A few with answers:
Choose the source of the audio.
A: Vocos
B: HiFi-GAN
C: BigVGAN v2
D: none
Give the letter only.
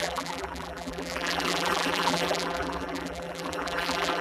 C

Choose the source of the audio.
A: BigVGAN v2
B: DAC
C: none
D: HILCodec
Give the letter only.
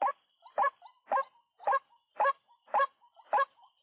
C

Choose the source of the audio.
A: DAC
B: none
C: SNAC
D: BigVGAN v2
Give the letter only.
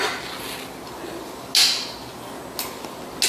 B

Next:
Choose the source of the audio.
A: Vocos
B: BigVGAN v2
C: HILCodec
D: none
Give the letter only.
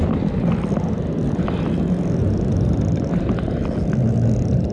D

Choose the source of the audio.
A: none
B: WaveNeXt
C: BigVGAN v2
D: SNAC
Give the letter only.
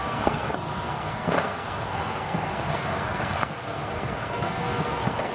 D